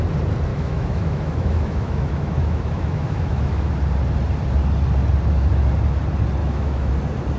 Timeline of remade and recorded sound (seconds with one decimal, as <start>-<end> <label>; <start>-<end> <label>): 0.0-0.5 recorded; 0.5-3.7 remade; 3.7-6.4 recorded; 6.4-6.9 remade; 6.9-7.4 recorded